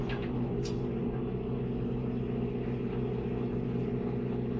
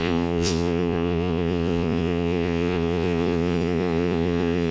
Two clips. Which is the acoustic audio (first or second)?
first